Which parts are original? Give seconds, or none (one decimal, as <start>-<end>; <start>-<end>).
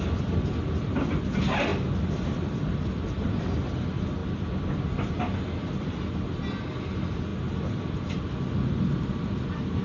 0.0-9.8